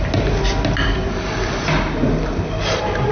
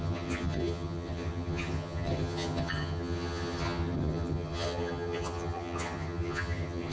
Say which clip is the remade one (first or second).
second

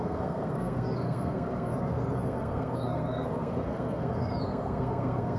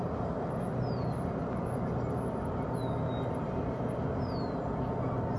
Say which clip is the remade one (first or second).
first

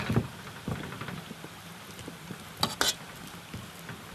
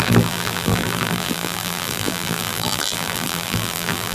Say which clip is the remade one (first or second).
second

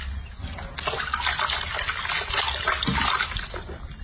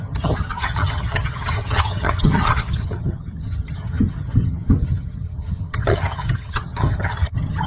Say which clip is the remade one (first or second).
second